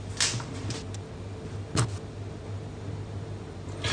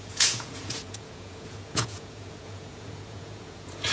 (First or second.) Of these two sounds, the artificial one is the second